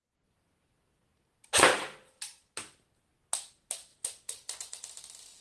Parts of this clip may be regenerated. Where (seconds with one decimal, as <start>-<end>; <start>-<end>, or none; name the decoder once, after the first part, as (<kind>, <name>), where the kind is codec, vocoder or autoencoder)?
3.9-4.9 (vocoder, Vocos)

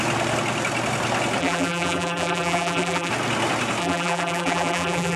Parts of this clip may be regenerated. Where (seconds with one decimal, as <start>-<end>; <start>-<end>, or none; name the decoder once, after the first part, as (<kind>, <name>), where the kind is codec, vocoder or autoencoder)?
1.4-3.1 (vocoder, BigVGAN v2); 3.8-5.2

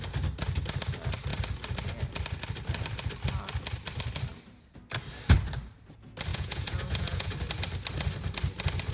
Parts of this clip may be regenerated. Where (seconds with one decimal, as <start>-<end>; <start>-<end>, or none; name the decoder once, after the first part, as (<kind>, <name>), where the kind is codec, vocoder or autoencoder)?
6.3-7.3 (vocoder, Vocos)

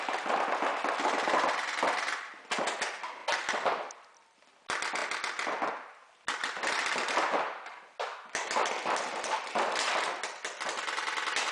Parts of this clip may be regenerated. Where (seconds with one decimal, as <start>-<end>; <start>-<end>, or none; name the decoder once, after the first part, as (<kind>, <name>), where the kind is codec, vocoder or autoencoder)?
none

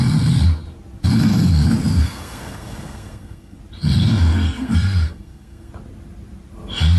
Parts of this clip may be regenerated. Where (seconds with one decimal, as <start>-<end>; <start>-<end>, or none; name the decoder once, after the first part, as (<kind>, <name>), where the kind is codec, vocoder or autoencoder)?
2.0-3.6 (codec, SNAC); 4.3-5.7

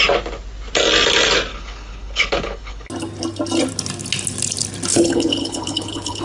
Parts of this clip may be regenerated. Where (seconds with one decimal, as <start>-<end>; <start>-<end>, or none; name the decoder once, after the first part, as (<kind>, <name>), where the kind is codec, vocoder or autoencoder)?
1.5-2.9 (codec, HILCodec); 4.9-6.2